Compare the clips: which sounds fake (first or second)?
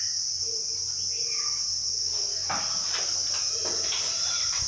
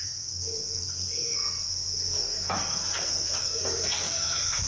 second